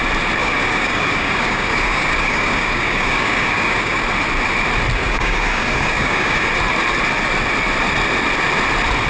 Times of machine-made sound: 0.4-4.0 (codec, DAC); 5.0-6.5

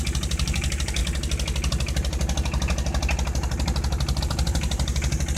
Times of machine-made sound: 0.0-1.0 (vocoder, BigVGAN v2); 4.2-5.4

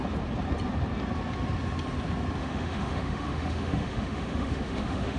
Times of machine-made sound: 2.4-5.2 (autoencoder, DAC-VAE)

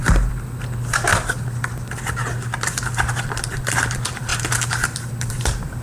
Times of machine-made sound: 0.0-1.1 (vocoder, BigVGAN v2); 2.8-5.8

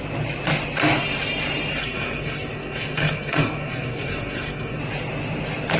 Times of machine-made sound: 1.8-4.8 (codec, SNAC)

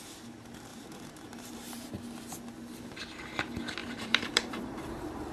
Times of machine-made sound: 0.7-1.9 (vocoder, BigVGAN v2); 3.8-5.3

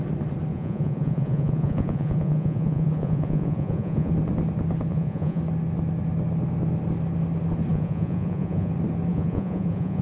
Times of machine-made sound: 0.5-4.1 (vocoder, Vocos); 4.9-5.4; 7.7-8.7; 9.1-10.0

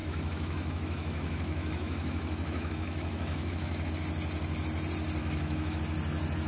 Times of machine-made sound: 0.0-3.9 (autoencoder, DAC-VAE); 5.2-5.8